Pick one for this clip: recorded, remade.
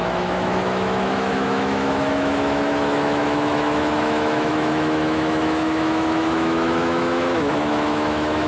remade